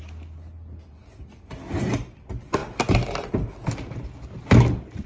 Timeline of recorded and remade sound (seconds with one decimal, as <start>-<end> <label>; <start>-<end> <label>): 0.0-5.1 recorded